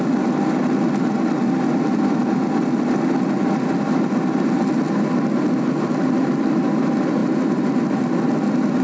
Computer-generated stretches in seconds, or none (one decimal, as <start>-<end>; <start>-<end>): none